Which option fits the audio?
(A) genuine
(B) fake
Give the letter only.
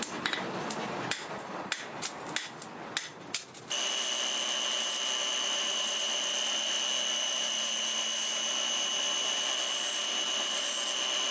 A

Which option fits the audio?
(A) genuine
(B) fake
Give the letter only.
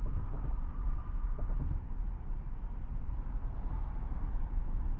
B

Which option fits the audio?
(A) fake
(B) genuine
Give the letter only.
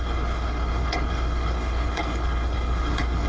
A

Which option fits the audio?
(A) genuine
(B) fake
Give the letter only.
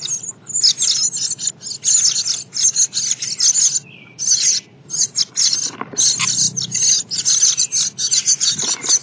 A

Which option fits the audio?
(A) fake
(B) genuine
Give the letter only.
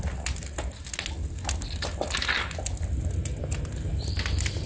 B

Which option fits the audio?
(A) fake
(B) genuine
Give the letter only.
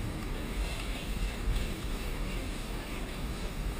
A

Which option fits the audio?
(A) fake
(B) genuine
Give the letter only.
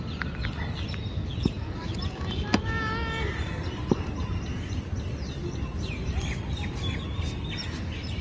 B